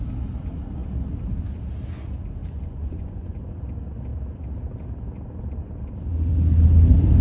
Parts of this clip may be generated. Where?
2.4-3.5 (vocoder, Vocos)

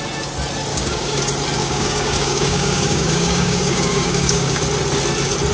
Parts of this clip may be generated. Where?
0.7-1.2 (codec, DAC); 1.6-4.6

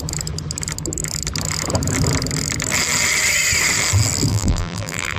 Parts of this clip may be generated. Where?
4.3-5.2 (vocoder, BigVGAN v2)

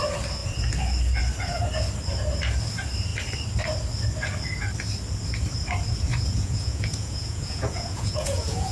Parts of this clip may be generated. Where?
6.1-8.7 (vocoder, Vocos)

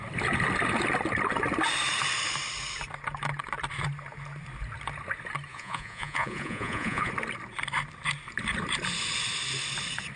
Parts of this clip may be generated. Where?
5.5-7.1 (vocoder, Vocos)

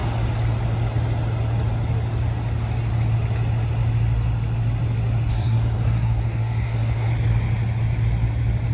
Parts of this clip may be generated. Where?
5.3-7.1 (codec, SNAC)

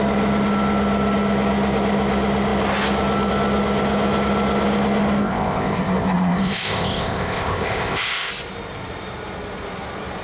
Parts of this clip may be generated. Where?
5.2-8.3 (codec, ZipCodec)

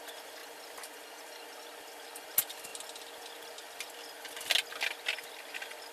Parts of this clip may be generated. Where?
none